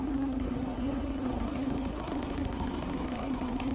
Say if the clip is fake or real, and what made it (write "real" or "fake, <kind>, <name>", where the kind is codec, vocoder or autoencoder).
fake, codec, SNAC